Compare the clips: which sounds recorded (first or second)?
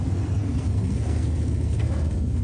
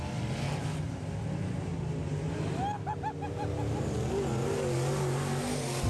second